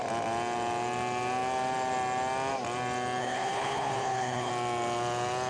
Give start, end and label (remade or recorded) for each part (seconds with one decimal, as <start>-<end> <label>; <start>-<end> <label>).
0.0-3.2 recorded; 3.2-4.5 remade; 4.5-5.5 recorded